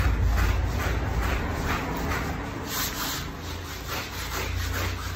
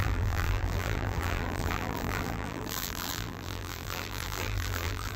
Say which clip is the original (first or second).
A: first